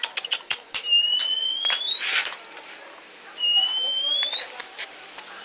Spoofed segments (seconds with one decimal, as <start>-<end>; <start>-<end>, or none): 1.2-1.8